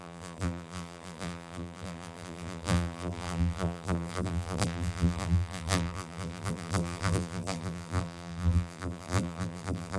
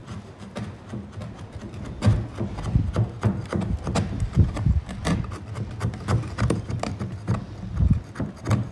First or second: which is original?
second